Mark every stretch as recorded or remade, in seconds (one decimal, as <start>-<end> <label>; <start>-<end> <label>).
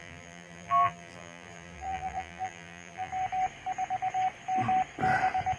0.0-3.1 remade; 3.1-5.6 recorded